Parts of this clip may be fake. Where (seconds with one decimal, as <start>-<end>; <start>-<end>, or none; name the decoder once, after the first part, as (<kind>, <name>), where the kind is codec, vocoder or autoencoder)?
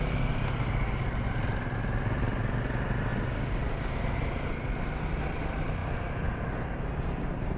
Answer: none